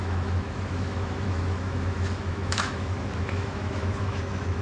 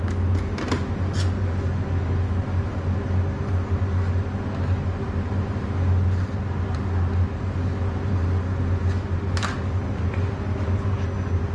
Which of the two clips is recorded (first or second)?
second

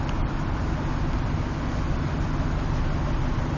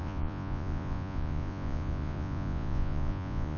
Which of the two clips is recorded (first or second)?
first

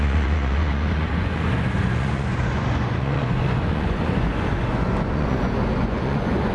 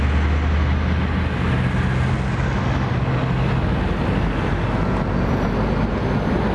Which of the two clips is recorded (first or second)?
second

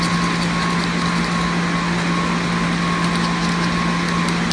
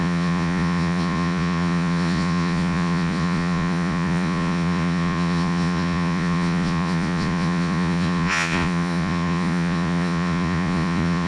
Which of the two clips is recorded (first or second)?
first